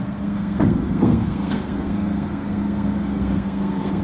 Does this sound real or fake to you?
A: fake